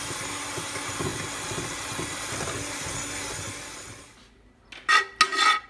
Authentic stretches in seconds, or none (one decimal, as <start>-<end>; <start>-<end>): 0.0-5.7